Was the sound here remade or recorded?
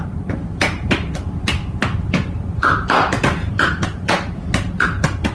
remade